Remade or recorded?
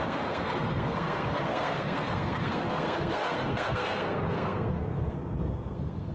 remade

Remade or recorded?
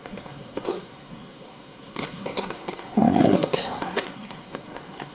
remade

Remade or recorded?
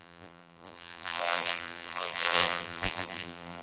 remade